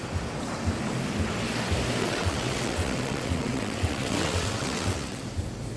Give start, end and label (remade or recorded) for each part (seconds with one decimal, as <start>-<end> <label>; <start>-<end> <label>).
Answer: 0.0-2.0 recorded; 2.0-5.2 remade; 5.2-5.8 recorded